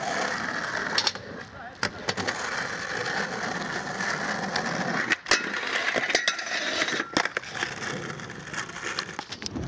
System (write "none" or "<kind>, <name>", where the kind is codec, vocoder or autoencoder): none